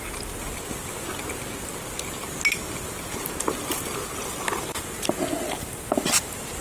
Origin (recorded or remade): recorded